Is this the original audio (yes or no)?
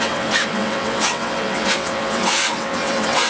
no